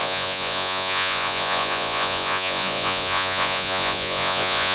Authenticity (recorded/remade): remade